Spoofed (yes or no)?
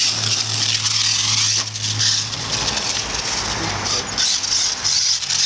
no